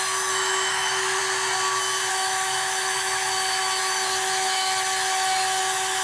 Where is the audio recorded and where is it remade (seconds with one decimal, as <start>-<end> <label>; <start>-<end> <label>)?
0.0-1.2 remade; 1.2-2.1 recorded; 2.1-6.0 remade